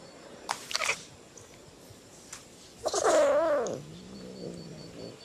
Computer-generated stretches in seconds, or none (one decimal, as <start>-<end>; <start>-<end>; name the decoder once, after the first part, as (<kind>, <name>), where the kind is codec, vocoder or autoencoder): 0.0-1.6 (vocoder, BigVGAN v2); 4.7-5.2